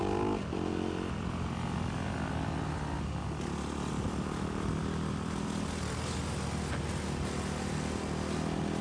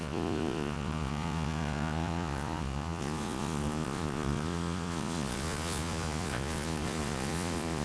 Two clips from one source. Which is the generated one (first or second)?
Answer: second